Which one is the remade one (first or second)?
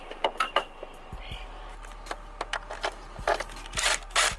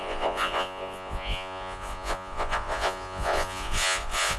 second